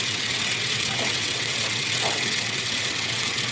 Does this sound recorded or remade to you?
remade